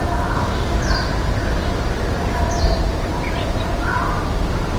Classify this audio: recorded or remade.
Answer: recorded